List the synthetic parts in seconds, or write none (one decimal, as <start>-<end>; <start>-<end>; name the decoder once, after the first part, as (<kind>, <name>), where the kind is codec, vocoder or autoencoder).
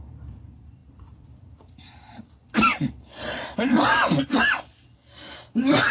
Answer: 0.8-4.3 (vocoder, BigVGAN v2)